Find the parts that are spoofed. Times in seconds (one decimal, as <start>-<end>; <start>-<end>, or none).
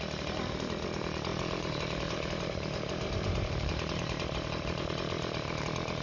1.3-4.9